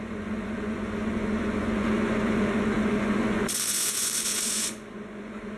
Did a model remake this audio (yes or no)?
yes